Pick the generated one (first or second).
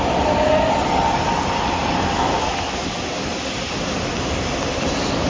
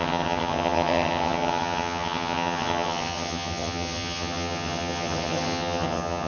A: second